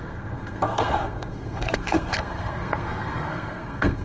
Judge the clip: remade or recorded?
remade